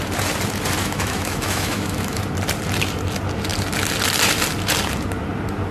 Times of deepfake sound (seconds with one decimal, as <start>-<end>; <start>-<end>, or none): 0.8-2.2